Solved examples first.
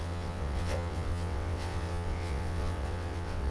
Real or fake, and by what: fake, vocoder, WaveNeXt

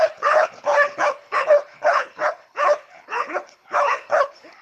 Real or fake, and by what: fake, codec, HILCodec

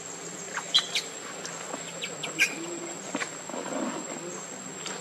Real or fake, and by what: real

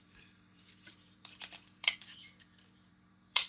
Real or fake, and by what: fake, vocoder, BigVGAN v2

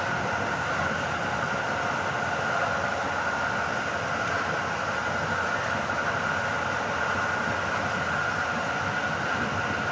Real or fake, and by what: real